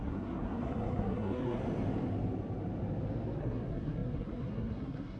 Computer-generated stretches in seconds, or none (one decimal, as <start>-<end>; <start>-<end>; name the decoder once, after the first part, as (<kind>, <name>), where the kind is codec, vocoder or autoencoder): 0.0-1.6 (codec, SNAC); 3.4-5.2